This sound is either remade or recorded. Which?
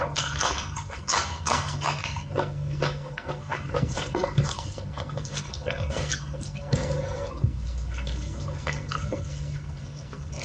remade